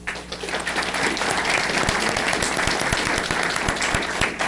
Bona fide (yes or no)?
yes